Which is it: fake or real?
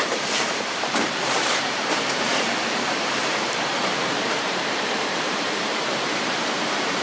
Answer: fake